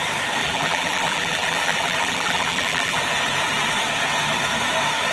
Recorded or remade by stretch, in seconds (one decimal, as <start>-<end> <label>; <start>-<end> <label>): 0.0-0.4 recorded; 0.4-3.0 remade; 3.0-5.1 recorded